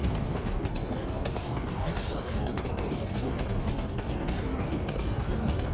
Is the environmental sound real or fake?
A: fake